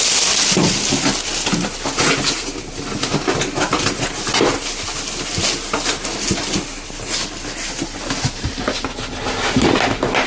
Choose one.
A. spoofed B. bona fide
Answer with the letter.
B